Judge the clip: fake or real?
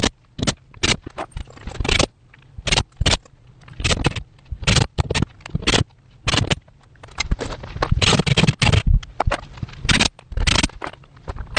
real